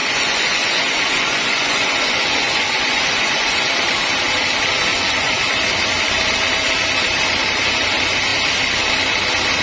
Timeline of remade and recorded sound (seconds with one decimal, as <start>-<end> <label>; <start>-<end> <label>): 0.0-3.7 remade; 3.7-4.9 recorded; 4.9-5.4 remade; 5.4-9.6 recorded